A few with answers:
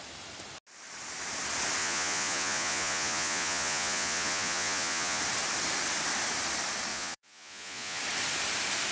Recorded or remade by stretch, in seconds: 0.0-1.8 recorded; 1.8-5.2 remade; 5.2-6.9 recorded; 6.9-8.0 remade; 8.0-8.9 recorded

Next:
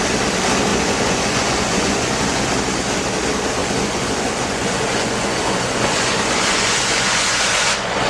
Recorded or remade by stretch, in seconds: 0.0-0.7 recorded; 0.7-2.5 remade; 2.5-3.6 recorded; 3.6-8.1 remade

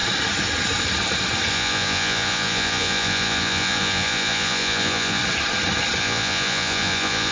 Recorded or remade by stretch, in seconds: 0.0-1.5 recorded; 1.5-5.2 remade; 5.2-6.0 recorded; 6.0-7.3 remade

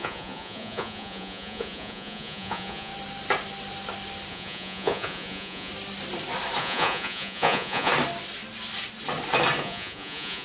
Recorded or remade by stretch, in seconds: 0.0-2.9 remade; 2.9-4.3 recorded; 4.3-5.7 remade; 5.7-6.6 recorded; 6.6-7.9 remade; 7.9-9.6 recorded; 9.6-10.4 remade

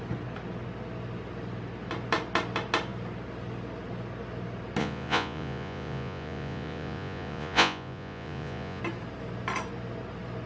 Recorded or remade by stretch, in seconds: 0.0-4.8 recorded; 4.8-8.8 remade; 8.8-10.5 recorded